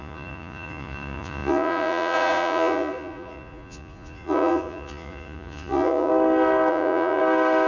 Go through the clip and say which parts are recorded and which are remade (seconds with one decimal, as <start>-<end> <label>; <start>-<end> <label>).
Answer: 0.0-6.1 remade; 6.1-6.7 recorded; 6.7-7.2 remade; 7.2-7.7 recorded